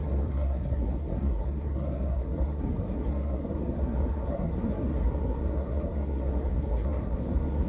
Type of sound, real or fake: fake